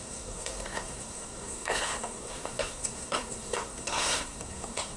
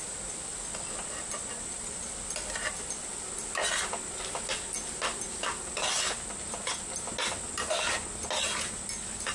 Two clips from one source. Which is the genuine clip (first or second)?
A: second